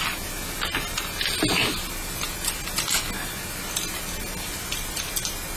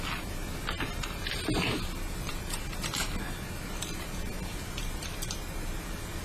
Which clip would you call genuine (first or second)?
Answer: first